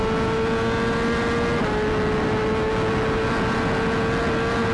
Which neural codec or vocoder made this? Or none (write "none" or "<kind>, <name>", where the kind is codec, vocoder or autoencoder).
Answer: none